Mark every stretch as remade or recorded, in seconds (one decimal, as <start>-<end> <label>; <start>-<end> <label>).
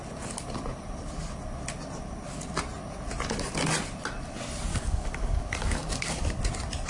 0.0-4.7 recorded; 4.7-6.4 remade; 6.4-6.9 recorded